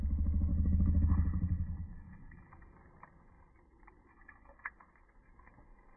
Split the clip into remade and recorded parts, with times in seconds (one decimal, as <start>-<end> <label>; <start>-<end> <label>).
0.0-0.5 recorded; 0.5-2.5 remade; 2.5-4.1 recorded; 4.1-4.7 remade; 4.7-6.0 recorded